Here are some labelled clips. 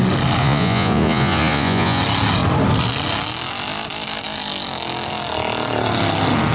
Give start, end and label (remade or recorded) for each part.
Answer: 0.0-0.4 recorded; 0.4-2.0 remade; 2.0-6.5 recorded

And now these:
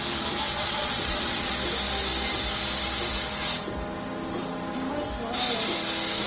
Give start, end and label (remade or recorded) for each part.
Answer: 0.0-0.5 recorded; 0.5-1.5 remade; 1.5-6.3 recorded

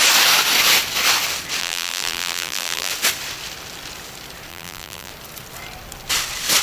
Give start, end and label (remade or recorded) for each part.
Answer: 0.0-1.6 recorded; 1.6-2.9 remade; 2.9-4.5 recorded; 4.5-5.1 remade; 5.1-6.6 recorded

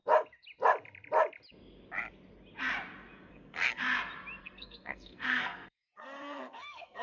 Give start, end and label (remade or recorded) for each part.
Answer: 0.0-3.3 recorded; 3.3-3.8 remade; 3.8-4.4 recorded; 4.4-7.0 remade

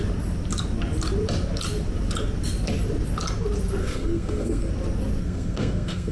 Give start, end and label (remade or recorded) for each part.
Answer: 0.0-3.8 recorded; 3.8-4.7 remade; 4.7-5.2 recorded; 5.2-6.1 remade

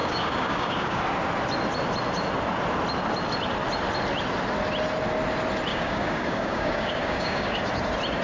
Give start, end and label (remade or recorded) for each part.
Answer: 0.0-1.0 remade; 1.0-5.7 recorded; 5.7-7.6 remade; 7.6-8.2 recorded

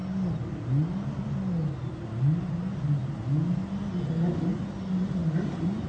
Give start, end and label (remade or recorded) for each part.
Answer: 0.0-5.9 recorded

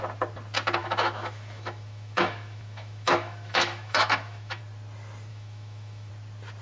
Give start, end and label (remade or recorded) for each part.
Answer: 0.0-0.8 recorded; 0.8-4.6 remade; 4.6-5.3 recorded; 5.3-6.1 remade; 6.1-6.6 recorded